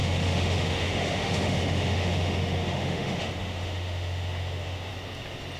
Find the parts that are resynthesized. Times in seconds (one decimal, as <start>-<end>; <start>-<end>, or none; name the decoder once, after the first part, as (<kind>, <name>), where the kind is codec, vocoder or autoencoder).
0.0-4.9 (autoencoder, DAC-VAE)